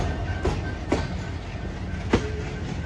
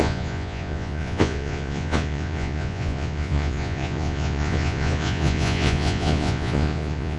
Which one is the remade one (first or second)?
second